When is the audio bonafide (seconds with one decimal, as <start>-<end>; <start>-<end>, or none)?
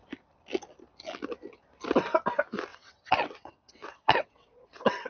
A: 0.0-2.7